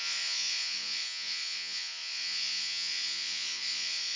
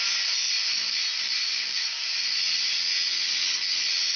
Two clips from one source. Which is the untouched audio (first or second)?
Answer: second